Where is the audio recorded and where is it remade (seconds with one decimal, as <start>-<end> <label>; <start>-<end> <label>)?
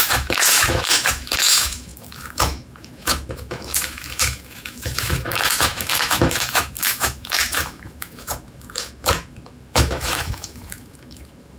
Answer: 0.0-11.6 remade